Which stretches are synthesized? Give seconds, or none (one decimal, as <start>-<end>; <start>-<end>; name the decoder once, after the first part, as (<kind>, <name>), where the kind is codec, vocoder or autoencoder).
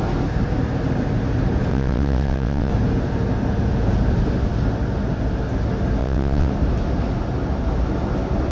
1.7-2.7 (vocoder, WaveNeXt); 6.0-6.5